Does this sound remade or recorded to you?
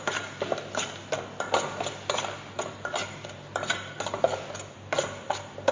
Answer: recorded